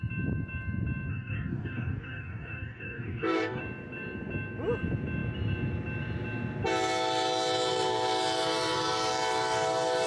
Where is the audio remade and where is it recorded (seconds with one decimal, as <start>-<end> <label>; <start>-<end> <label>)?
0.0-1.1 recorded; 1.1-3.6 remade; 3.6-10.1 recorded